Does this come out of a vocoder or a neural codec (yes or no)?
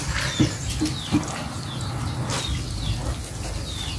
no